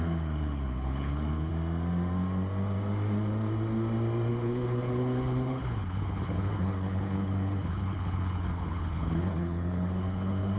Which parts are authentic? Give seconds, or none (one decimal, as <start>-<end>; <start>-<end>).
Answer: 1.5-4.3